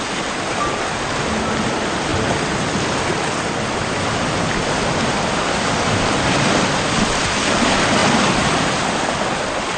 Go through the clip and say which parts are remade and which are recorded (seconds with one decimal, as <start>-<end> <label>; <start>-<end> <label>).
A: 0.0-2.1 recorded; 2.1-6.0 remade; 6.0-9.8 recorded